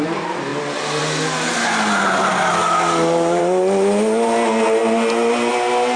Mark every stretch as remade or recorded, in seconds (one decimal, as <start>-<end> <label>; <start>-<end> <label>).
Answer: 0.0-2.6 recorded; 2.6-3.4 remade; 3.4-6.0 recorded